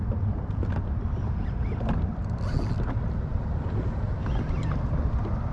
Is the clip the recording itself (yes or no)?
yes